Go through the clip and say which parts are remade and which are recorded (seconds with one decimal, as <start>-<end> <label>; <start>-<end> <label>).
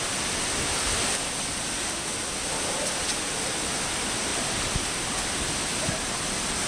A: 0.0-6.7 recorded